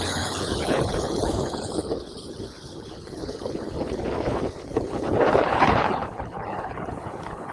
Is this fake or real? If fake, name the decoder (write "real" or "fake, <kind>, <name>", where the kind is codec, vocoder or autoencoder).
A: fake, codec, HILCodec